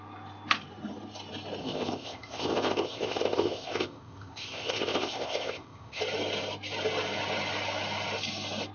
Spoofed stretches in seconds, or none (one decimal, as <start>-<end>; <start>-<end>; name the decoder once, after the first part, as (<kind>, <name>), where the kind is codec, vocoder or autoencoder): 1.6-6.0 (codec, ZipCodec)